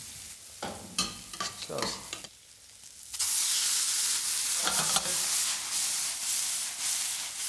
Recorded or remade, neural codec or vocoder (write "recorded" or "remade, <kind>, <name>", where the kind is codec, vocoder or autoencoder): recorded